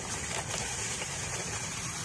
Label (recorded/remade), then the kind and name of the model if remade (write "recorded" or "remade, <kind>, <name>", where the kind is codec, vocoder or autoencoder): recorded